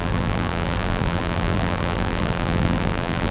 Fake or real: fake